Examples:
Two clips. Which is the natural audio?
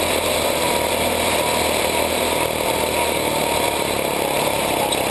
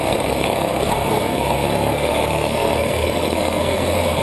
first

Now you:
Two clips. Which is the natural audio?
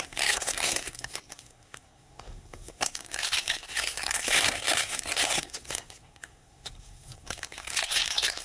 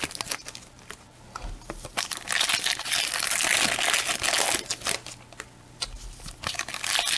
second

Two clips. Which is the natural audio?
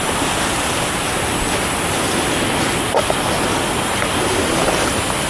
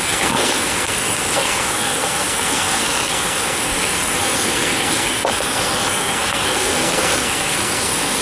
first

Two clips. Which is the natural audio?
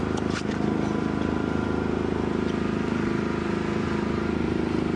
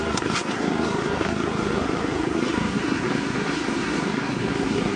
first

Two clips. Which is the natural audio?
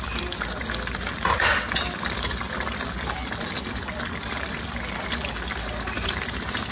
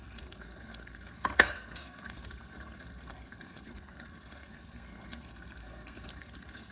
first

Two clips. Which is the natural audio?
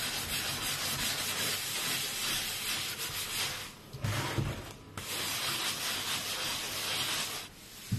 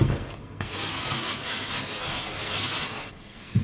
first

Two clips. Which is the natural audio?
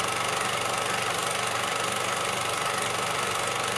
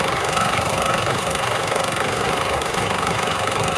first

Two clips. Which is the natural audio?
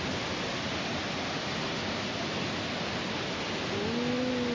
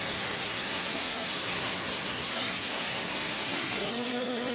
first